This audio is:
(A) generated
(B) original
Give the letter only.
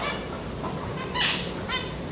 B